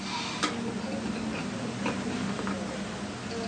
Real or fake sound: real